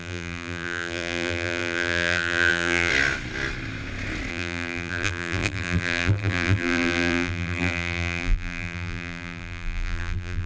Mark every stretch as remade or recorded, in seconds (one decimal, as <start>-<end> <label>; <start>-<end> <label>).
0.0-2.9 remade; 2.9-4.3 recorded; 4.3-10.5 remade